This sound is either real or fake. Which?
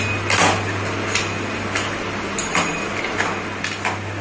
real